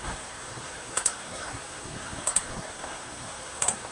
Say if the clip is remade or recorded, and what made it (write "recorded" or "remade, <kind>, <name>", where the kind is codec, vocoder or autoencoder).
remade, codec, SNAC